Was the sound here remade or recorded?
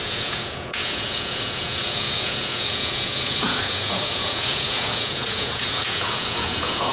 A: remade